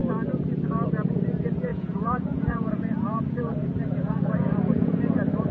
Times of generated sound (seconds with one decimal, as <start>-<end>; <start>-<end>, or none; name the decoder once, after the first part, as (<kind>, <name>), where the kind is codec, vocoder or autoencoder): 1.7-5.0 (vocoder, Vocos)